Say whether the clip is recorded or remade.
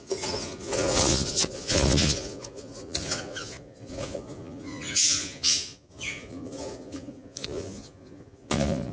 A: remade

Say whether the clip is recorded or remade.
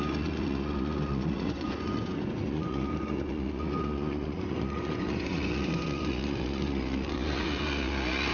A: remade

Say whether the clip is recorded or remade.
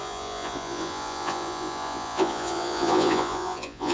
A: remade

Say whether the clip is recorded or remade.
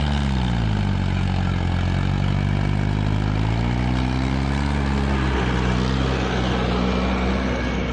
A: recorded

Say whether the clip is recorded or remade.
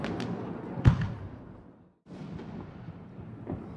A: recorded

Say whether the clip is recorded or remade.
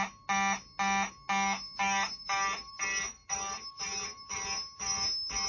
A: recorded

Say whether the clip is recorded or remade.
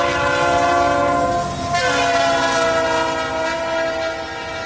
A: recorded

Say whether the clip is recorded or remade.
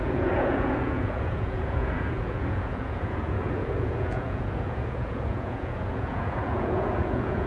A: remade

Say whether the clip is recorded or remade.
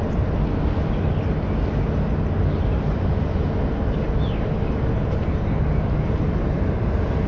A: recorded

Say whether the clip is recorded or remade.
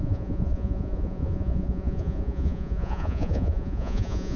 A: remade